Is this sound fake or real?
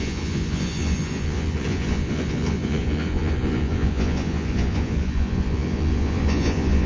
fake